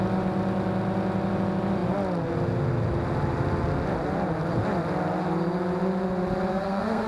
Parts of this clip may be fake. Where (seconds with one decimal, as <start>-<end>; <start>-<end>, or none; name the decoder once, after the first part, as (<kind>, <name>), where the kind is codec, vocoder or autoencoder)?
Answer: 6.5-7.1 (codec, SNAC)

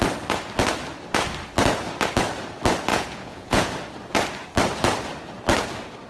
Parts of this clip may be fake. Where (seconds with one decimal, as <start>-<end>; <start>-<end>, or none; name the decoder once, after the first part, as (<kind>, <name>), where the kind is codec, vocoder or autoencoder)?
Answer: 2.9-3.7 (vocoder, Vocos)

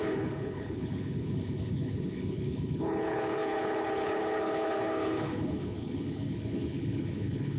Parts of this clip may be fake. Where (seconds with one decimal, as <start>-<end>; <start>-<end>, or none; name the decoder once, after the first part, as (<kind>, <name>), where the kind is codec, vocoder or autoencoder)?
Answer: 0.0-7.6 (codec, HILCodec)

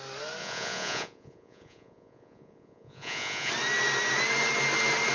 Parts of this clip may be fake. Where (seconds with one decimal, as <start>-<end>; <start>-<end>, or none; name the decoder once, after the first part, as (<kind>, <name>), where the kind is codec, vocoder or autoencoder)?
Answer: 0.4-3.5 (vocoder, Vocos)

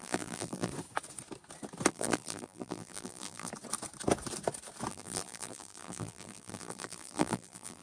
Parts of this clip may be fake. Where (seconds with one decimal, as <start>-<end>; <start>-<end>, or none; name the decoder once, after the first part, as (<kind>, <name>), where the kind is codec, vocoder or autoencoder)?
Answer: 0.0-0.7 (vocoder, BigVGAN v2); 1.9-3.5; 4.9-7.8

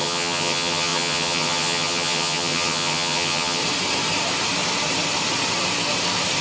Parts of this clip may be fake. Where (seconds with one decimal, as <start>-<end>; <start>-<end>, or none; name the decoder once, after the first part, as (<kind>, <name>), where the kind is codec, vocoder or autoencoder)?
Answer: 0.0-3.6 (vocoder, HiFi-GAN)

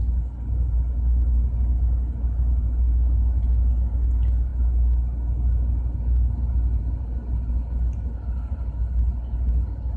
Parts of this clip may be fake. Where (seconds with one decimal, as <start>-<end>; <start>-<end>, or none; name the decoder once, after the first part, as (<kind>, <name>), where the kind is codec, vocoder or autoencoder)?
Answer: none

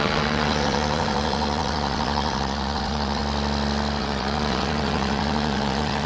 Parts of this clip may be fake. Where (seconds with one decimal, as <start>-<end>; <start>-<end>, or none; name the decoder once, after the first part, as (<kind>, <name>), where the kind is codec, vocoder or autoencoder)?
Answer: 0.0-3.2 (vocoder, WaveNeXt); 4.0-6.1